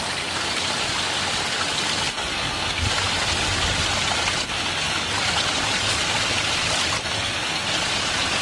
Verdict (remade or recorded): recorded